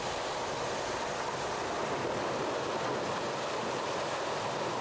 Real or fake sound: real